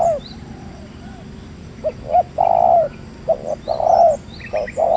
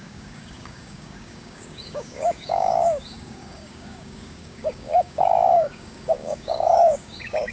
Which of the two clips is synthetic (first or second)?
second